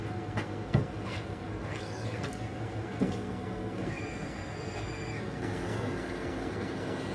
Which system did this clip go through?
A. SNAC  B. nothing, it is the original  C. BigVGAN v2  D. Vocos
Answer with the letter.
A